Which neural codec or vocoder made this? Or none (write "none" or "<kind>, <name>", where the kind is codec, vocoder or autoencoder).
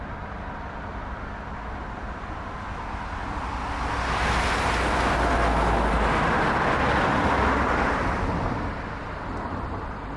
none